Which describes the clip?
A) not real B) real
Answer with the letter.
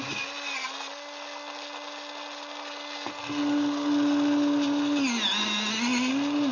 B